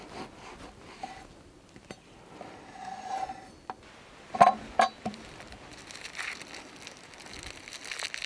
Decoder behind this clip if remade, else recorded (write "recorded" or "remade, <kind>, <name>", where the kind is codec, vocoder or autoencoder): recorded